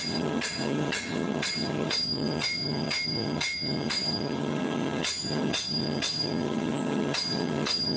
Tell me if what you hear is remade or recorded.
remade